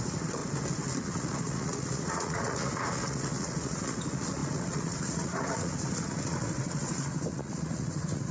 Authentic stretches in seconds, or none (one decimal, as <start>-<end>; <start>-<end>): 0.4-1.0